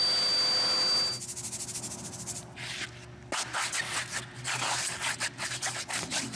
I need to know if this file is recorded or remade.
recorded